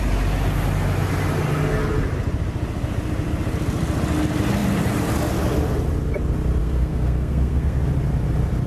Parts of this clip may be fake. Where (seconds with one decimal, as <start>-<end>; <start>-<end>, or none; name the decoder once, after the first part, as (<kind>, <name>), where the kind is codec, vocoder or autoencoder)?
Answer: 6.6-7.8 (codec, SNAC)